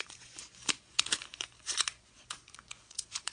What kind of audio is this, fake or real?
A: fake